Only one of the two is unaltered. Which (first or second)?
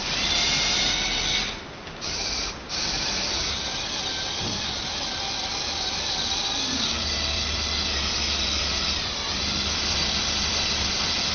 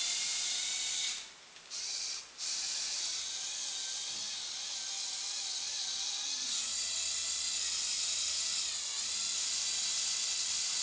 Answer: second